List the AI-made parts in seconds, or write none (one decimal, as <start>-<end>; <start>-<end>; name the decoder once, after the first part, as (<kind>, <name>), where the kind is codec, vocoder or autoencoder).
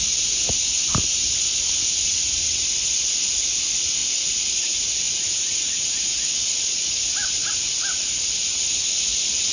none